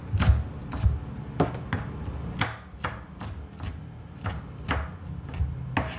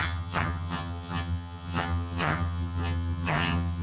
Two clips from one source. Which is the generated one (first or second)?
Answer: second